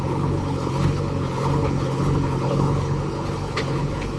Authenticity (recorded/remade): remade